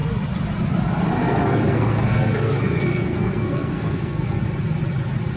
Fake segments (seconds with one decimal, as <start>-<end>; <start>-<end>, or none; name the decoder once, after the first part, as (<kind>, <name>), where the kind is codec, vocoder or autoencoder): 1.2-4.4 (codec, SNAC)